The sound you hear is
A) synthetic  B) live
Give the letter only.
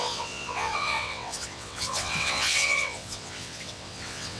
A